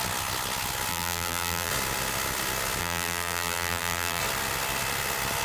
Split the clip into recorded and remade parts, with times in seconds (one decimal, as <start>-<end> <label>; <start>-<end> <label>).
0.0-0.9 recorded; 0.9-1.7 remade; 1.7-2.8 recorded; 2.8-4.2 remade; 4.2-5.4 recorded